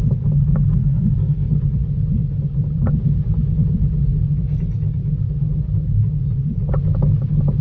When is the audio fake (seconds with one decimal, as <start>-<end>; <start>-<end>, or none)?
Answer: 0.8-1.5